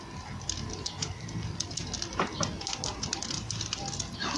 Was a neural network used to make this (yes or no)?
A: no